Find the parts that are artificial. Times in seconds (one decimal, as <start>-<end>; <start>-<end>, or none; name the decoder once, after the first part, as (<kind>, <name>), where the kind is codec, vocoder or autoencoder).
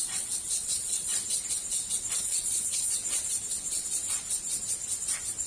0.0-1.2 (vocoder, WaveNeXt); 2.2-3.0